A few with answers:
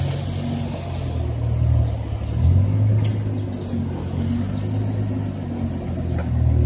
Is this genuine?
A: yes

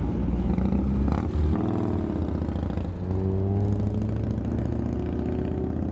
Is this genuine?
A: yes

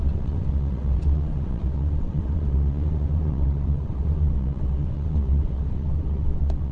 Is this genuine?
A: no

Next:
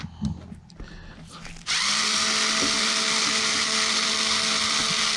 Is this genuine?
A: yes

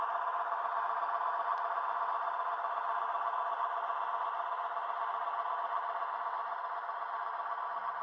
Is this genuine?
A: yes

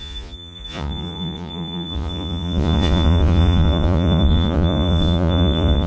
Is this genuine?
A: no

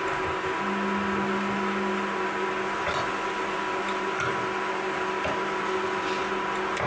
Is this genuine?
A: yes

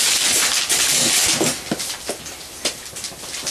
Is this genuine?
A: yes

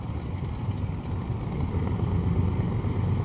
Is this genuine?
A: yes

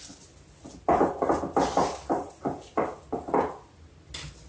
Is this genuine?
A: yes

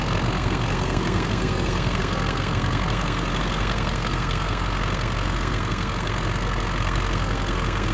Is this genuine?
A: no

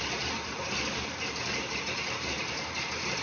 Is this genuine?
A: no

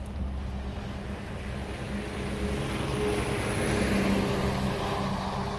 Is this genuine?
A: yes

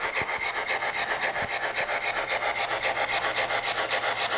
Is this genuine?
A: yes